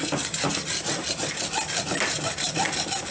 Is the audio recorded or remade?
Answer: recorded